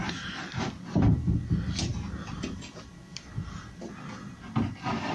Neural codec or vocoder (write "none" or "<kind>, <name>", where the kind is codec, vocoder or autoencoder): none